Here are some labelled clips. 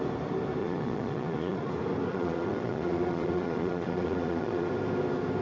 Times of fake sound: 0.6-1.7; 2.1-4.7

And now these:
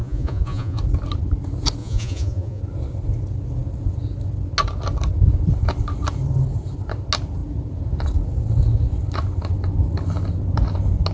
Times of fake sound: 0.0-0.8; 1.8-2.6

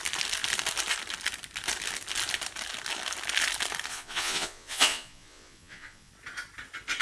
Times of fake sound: 3.9-6.1